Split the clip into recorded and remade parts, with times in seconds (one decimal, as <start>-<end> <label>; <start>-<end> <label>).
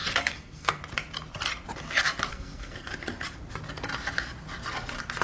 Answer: 0.0-0.8 remade; 0.8-2.3 recorded; 2.3-2.9 remade; 2.9-5.2 recorded